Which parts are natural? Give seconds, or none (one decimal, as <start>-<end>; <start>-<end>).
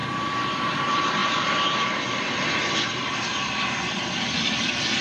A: 0.0-0.5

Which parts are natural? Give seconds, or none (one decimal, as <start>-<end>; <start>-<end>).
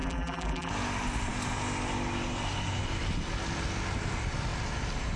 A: 0.7-5.2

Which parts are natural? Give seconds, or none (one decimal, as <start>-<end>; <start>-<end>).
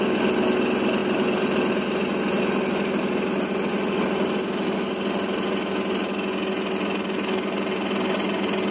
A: 0.0-1.0; 1.7-8.7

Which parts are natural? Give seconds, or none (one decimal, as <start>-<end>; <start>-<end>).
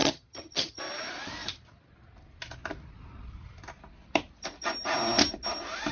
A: 0.8-5.9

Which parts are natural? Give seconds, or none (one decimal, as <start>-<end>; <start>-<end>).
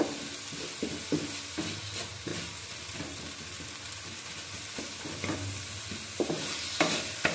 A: 0.0-2.3; 3.4-7.3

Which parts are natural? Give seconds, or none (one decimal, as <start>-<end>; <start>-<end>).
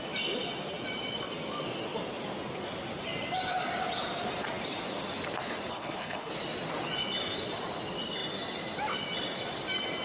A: 0.0-5.7; 6.3-10.0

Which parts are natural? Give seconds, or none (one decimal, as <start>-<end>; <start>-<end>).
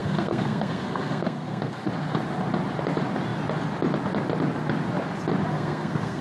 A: 1.9-5.5